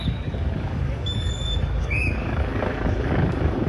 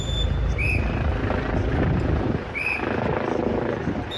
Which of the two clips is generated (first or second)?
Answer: first